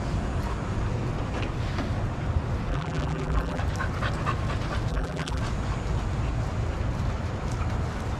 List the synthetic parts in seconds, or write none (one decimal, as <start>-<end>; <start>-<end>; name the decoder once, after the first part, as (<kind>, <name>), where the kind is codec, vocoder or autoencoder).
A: 2.7-3.6 (vocoder, BigVGAN v2); 4.9-5.4